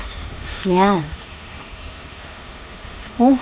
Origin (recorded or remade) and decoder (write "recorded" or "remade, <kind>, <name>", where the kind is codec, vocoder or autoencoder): remade, autoencoder, DAC-VAE